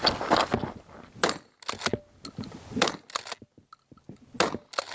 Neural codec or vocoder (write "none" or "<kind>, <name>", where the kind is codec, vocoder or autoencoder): none